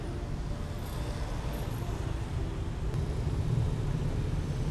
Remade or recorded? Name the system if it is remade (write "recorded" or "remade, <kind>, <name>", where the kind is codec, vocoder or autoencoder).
recorded